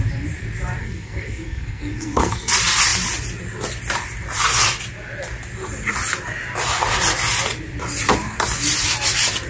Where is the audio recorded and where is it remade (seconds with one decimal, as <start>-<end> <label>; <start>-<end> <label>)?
0.0-0.8 recorded; 0.8-2.5 remade; 2.5-9.5 recorded